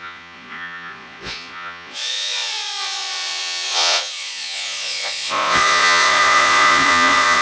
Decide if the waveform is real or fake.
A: fake